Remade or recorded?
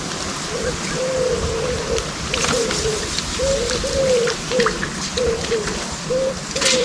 recorded